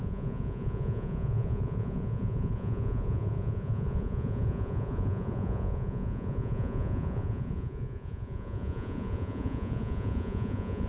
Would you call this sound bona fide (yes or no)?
no